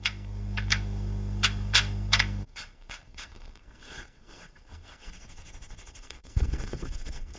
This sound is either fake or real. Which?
fake